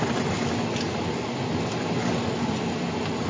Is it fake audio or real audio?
real